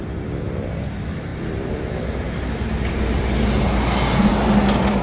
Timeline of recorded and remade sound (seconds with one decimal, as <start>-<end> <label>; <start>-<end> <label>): 0.0-5.0 recorded

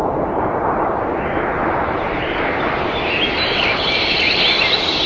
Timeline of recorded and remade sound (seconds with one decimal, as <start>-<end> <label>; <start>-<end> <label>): 0.0-1.0 remade; 1.0-1.6 recorded; 1.6-4.5 remade; 4.5-5.1 recorded

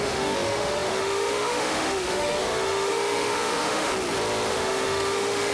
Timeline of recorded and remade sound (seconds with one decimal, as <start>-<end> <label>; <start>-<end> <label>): 0.0-3.9 remade; 3.9-4.5 recorded; 4.5-5.5 remade

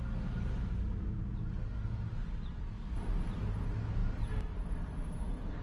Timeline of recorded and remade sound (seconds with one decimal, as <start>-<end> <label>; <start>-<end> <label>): 0.0-4.0 recorded; 4.0-4.7 remade; 4.7-5.6 recorded